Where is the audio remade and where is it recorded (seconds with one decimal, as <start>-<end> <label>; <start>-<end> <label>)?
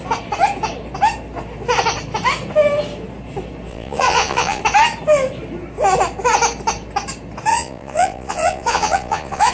0.0-3.7 recorded; 3.7-4.6 remade; 4.6-7.5 recorded; 7.5-9.5 remade